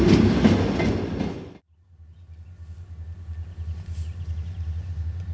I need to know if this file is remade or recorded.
recorded